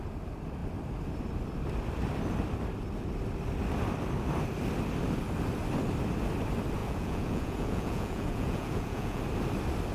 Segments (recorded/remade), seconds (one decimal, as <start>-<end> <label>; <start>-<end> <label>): 0.0-6.8 recorded; 6.8-9.2 remade; 9.2-9.9 recorded